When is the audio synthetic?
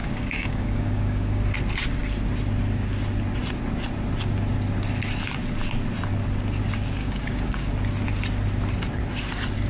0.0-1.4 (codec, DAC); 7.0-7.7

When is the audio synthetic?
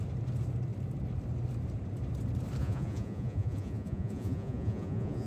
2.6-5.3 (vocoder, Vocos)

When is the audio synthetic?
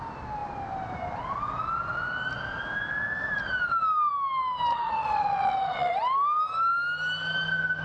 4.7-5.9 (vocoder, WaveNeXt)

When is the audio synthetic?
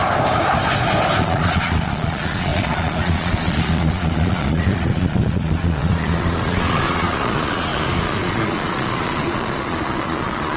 1.2-10.6 (vocoder, Vocos)